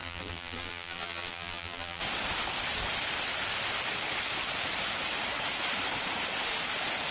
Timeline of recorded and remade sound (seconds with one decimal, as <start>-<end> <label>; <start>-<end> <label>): 0.0-2.0 remade; 2.0-7.1 recorded